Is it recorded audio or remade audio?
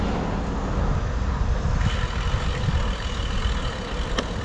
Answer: recorded